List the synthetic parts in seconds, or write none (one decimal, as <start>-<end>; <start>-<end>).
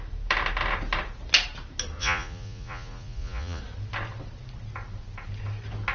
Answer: 2.0-3.6